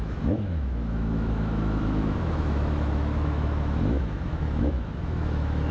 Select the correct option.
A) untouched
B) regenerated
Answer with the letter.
B